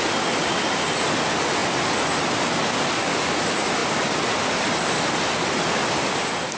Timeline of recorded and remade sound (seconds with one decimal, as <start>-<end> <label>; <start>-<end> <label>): 0.0-6.6 recorded